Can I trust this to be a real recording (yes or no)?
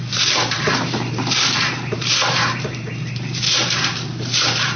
no